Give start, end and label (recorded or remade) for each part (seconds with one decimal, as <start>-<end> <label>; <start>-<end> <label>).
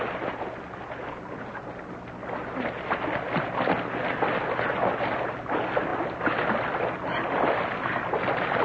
0.0-8.6 recorded